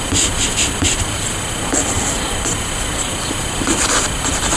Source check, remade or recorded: recorded